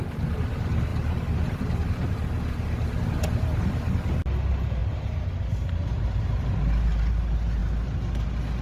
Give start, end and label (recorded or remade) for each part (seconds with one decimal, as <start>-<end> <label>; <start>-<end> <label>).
0.0-8.6 recorded